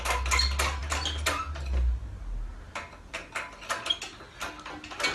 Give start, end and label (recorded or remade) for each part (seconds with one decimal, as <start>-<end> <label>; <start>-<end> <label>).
0.0-5.1 recorded